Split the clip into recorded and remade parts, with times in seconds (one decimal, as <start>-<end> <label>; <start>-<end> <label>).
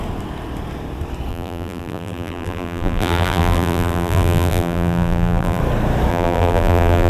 0.0-1.3 recorded; 1.3-5.6 remade; 5.6-6.1 recorded; 6.1-7.1 remade